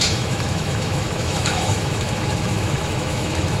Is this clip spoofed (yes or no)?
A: yes